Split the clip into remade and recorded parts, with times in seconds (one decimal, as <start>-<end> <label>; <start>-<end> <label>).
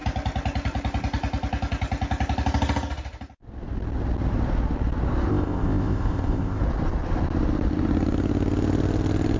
0.0-5.3 recorded; 5.3-6.6 remade; 6.6-9.4 recorded